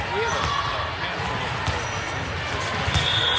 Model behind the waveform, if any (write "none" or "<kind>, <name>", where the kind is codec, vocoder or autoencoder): none